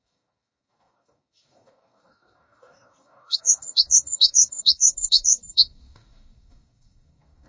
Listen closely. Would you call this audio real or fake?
fake